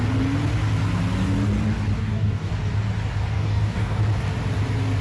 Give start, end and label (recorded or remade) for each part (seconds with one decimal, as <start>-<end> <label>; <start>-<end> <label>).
0.0-2.0 recorded; 2.0-2.5 remade; 2.5-3.3 recorded; 3.3-4.0 remade; 4.0-5.0 recorded